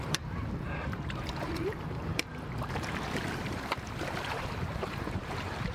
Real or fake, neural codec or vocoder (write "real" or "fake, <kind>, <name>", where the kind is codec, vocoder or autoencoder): fake, vocoder, BigVGAN v2